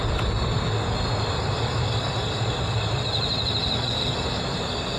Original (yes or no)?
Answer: yes